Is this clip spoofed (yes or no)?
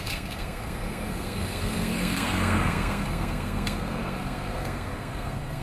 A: yes